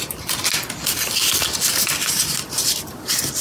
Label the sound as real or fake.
real